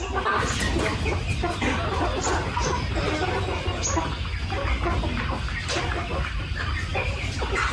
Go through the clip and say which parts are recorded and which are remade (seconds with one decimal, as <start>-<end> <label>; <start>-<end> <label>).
0.0-7.7 recorded